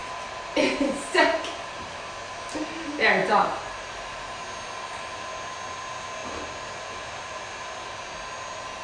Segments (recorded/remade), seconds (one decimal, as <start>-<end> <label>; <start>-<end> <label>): 0.0-2.1 remade; 2.1-3.2 recorded; 3.2-4.2 remade; 4.2-8.8 recorded